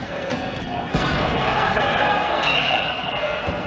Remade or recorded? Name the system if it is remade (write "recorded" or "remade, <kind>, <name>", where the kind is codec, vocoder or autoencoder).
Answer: remade, codec, SNAC